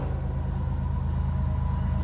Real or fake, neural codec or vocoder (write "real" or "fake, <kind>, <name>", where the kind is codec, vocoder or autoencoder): real